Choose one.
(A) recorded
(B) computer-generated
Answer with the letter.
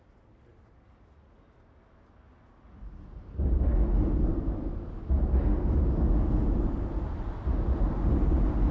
A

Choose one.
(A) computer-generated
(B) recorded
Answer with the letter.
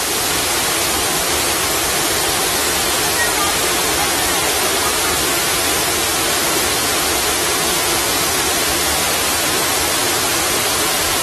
B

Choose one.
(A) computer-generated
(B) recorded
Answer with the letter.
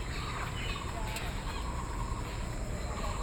B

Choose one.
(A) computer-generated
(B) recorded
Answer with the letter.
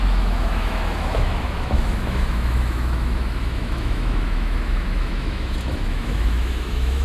A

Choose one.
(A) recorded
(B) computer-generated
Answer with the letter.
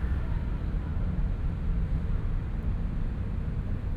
A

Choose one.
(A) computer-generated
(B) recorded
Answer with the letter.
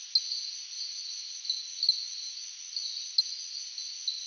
B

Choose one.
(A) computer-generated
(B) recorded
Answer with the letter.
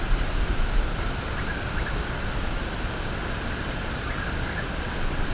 B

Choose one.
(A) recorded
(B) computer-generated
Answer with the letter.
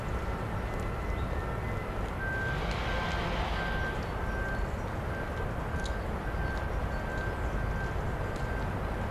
A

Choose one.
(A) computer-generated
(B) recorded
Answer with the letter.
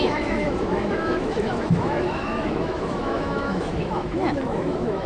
A